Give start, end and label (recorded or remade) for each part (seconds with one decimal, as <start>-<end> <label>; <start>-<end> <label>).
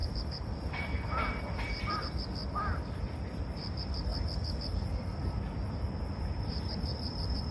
0.0-4.1 remade; 4.1-5.7 recorded; 5.7-7.5 remade